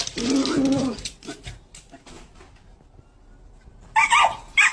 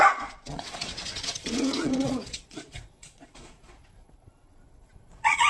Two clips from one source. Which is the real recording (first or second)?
first